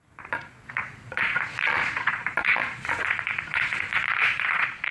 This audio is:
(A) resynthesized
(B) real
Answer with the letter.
A